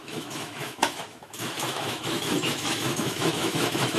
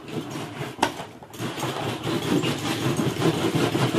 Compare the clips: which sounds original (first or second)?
second